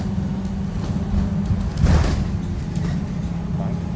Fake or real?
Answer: real